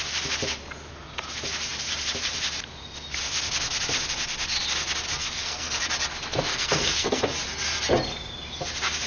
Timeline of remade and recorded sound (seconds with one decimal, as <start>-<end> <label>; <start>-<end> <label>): 0.0-5.2 recorded; 5.2-5.8 remade; 5.8-6.5 recorded; 6.5-7.2 remade; 7.2-9.1 recorded